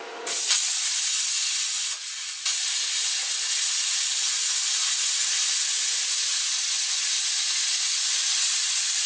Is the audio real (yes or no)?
yes